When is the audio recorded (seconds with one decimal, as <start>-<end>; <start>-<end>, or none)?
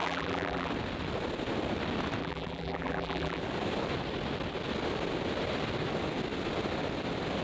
0.7-2.2; 3.4-7.4